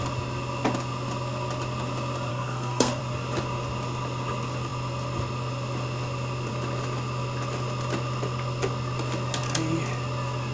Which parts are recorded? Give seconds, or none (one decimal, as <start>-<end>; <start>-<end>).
0.0-2.3; 3.0-10.5